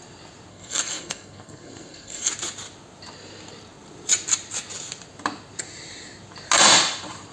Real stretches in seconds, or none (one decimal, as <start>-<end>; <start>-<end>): 0.0-0.5; 2.3-7.3